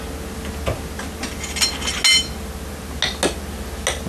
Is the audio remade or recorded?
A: recorded